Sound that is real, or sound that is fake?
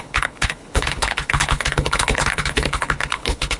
fake